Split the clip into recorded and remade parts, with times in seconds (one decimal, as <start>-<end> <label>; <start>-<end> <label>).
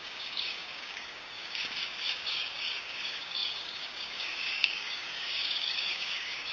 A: 0.0-6.5 remade